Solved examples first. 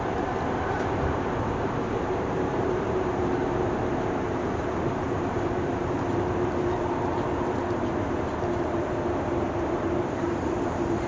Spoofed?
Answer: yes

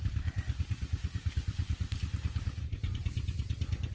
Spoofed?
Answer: no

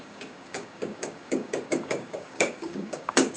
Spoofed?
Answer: yes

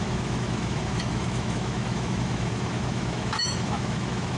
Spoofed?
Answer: yes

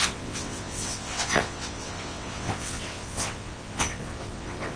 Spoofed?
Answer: yes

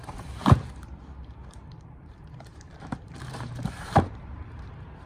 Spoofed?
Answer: yes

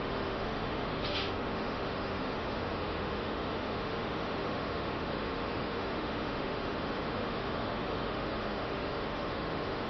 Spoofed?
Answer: yes